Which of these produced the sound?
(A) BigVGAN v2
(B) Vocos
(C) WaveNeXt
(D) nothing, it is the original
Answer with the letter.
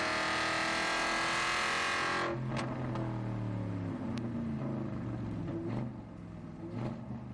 D